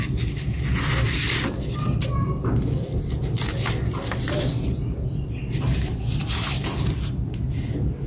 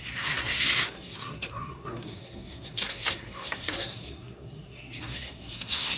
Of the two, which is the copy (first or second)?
second